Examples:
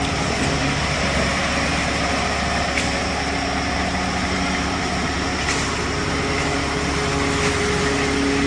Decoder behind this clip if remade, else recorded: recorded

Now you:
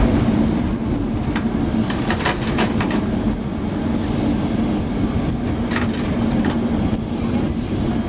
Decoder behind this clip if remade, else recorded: recorded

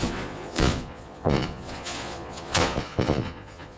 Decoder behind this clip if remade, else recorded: remade, vocoder, Vocos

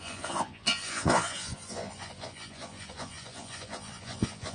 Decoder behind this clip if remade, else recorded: remade, vocoder, Vocos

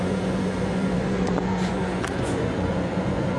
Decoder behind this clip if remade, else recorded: remade, vocoder, Vocos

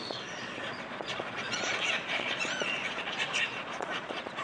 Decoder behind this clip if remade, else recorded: remade, vocoder, Vocos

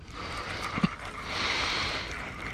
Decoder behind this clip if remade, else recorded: recorded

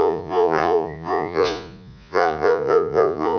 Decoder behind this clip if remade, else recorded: remade, vocoder, Vocos